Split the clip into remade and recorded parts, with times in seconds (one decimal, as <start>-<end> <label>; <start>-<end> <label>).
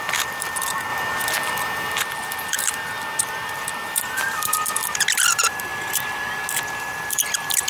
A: 0.0-0.9 remade; 0.9-2.0 recorded; 2.0-5.7 remade; 5.7-6.8 recorded; 6.8-7.7 remade